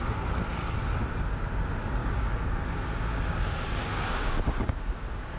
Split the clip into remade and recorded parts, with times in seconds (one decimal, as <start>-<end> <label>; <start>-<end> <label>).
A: 0.0-2.0 recorded; 2.0-5.4 remade